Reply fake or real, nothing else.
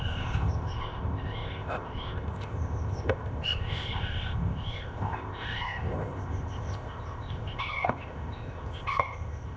fake